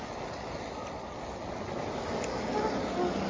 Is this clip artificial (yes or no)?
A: no